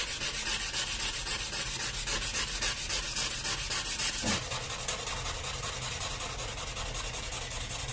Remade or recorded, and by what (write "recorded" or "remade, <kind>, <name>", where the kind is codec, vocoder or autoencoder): recorded